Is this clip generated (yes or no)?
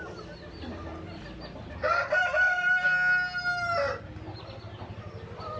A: no